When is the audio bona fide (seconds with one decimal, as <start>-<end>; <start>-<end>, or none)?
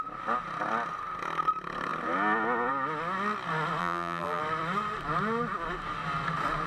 0.0-3.8; 4.4-6.7